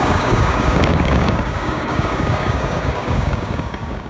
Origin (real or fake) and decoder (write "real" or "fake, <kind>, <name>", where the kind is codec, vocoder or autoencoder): fake, codec, DAC